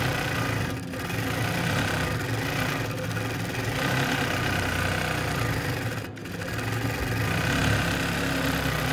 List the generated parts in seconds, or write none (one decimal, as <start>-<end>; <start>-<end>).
none